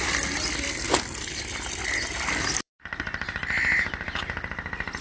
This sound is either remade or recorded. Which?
recorded